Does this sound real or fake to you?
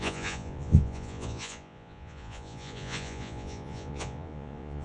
fake